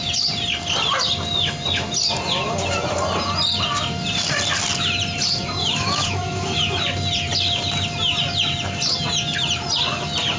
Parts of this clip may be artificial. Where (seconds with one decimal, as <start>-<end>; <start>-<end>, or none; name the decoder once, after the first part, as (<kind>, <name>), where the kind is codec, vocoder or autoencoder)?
5.6-6.6 (autoencoder, DAC-VAE)